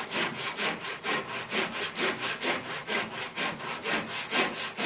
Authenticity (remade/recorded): recorded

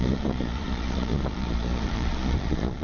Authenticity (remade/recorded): remade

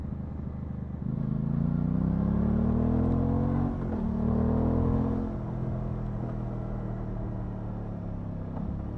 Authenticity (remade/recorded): recorded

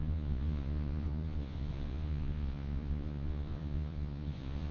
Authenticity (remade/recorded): remade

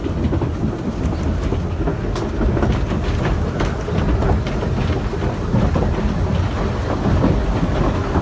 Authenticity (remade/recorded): recorded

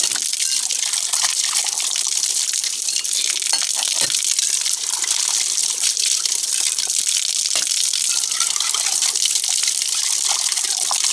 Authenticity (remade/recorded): recorded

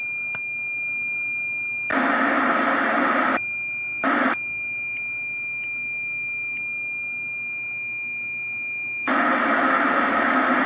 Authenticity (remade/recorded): recorded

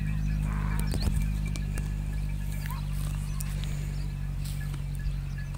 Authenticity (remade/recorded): recorded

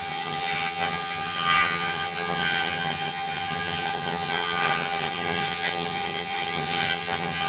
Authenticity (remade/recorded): remade